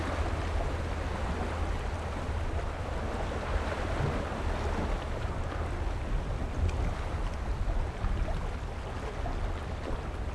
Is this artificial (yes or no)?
no